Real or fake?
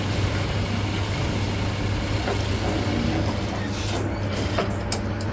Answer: real